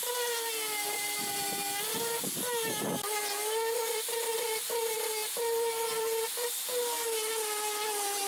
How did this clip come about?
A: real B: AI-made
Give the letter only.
A